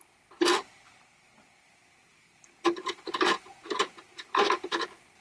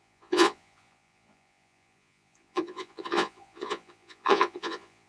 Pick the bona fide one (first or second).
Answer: first